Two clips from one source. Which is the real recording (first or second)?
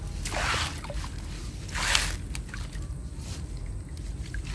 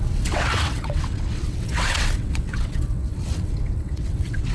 first